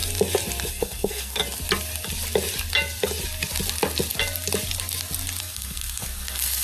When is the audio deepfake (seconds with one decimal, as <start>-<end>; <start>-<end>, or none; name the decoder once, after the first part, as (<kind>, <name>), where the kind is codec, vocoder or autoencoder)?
0.7-1.4 (codec, SNAC); 5.4-6.6